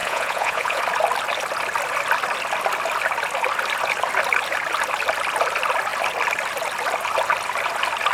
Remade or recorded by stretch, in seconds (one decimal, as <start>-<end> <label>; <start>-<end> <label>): 0.0-0.8 remade; 0.8-8.1 recorded